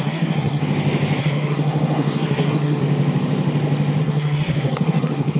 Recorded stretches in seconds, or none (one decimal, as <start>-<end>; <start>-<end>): 0.6-1.2; 2.8-4.0